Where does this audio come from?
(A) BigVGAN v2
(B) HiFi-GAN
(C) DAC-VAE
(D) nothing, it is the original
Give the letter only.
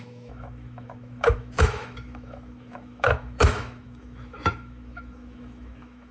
C